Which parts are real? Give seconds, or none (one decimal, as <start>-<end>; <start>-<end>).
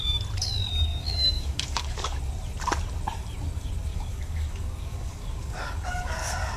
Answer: 0.0-0.9; 2.2-3.9